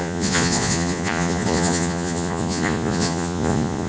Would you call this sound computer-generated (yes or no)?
yes